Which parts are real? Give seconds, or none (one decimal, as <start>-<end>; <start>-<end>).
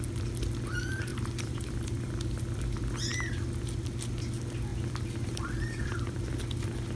0.0-1.1; 2.6-4.7; 6.4-7.0